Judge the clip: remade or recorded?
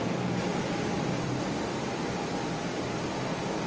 remade